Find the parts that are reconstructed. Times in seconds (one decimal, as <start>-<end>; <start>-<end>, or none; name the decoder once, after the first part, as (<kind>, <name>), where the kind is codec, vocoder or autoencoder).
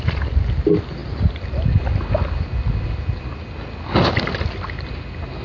none